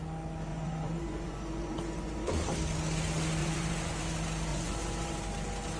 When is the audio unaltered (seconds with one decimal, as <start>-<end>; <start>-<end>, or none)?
0.0-0.5; 2.4-3.4; 4.0-4.5; 5.2-5.8